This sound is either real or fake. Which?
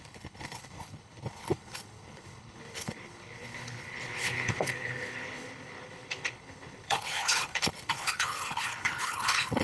fake